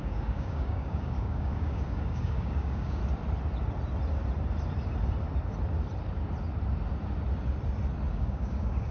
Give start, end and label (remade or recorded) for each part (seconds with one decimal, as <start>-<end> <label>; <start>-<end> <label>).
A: 0.0-3.0 remade; 3.0-8.1 recorded; 8.1-8.9 remade